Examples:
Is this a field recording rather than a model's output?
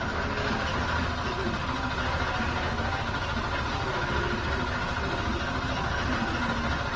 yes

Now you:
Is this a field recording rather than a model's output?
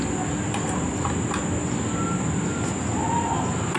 yes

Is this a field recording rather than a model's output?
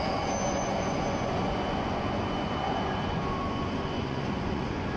no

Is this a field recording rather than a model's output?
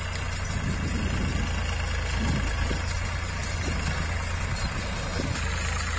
yes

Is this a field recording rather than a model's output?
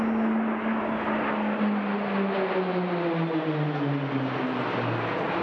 yes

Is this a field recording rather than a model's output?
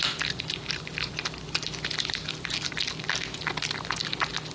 yes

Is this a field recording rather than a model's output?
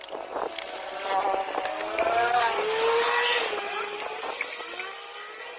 yes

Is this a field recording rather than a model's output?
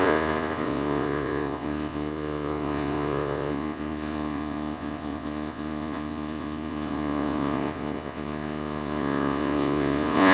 no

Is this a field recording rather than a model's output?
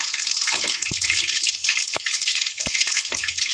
no